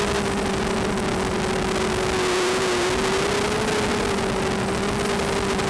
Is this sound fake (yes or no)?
no